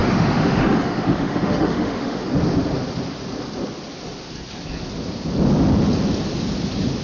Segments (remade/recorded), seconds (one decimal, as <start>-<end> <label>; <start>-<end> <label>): 0.0-2.3 remade; 2.3-7.0 recorded